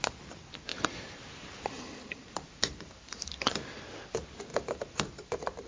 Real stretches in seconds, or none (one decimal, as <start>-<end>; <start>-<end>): 0.0-0.7; 4.0-4.5; 5.3-5.7